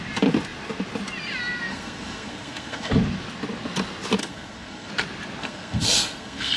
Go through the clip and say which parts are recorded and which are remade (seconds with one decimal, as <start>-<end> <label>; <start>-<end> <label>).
0.0-1.7 recorded; 1.7-2.9 remade; 2.9-4.2 recorded; 4.2-4.9 remade; 4.9-5.4 recorded; 5.4-6.6 remade